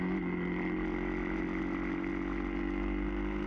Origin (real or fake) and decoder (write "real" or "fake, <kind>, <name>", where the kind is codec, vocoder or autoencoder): real